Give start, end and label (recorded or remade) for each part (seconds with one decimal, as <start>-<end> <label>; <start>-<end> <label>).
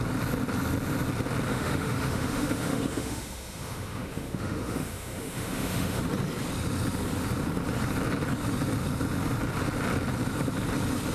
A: 0.0-1.5 recorded; 1.5-6.0 remade; 6.0-11.1 recorded